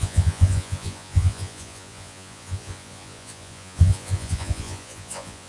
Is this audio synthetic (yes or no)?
yes